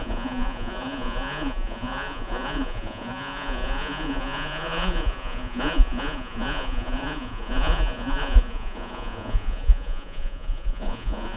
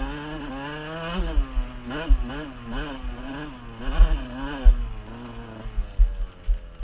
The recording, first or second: second